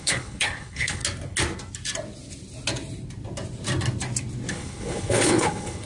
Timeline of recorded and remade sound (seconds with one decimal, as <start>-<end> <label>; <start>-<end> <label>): 0.0-1.0 remade; 1.0-4.5 recorded; 4.5-5.9 remade